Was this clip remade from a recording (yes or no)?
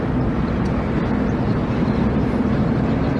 no